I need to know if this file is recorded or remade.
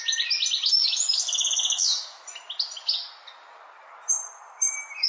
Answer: recorded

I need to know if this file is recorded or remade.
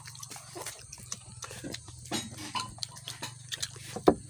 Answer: recorded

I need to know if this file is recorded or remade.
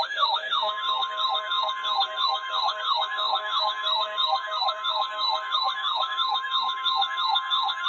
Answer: remade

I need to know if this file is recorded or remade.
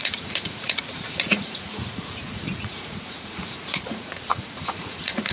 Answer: remade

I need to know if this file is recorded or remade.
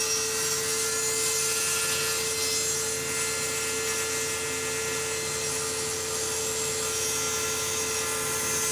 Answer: recorded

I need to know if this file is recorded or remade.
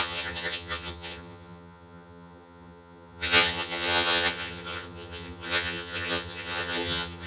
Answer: remade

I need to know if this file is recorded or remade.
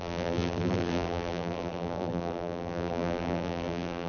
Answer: remade